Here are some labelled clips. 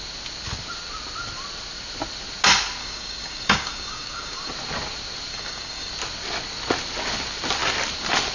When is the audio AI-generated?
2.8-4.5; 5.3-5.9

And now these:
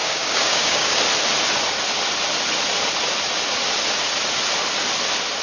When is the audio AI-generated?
0.0-1.0